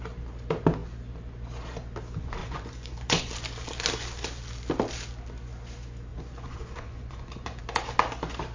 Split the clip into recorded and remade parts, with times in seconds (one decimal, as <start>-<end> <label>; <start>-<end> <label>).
0.0-2.4 recorded; 2.4-3.3 remade; 3.3-6.1 recorded; 6.1-7.6 remade; 7.6-8.5 recorded